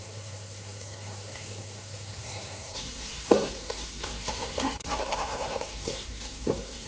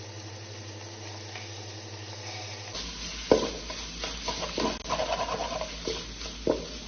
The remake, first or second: first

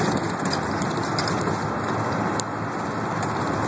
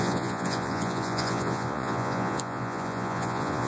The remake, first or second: second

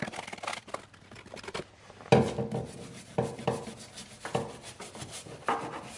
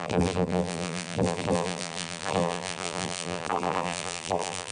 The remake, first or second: second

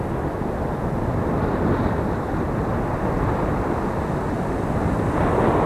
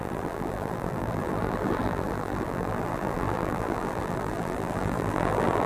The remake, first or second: second